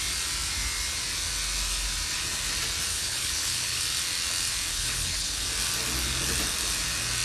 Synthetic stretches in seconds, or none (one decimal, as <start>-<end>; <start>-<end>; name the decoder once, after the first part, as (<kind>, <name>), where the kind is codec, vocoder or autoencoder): 2.9-3.8 (codec, HILCodec); 4.7-5.4